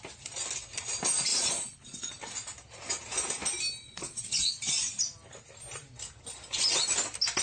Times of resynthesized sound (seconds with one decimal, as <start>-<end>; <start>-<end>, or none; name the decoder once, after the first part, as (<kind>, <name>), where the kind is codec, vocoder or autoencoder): 1.3-2.1 (vocoder, Vocos); 3.8-4.5